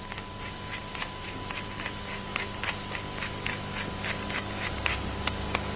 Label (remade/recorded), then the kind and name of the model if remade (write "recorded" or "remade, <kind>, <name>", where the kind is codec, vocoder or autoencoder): recorded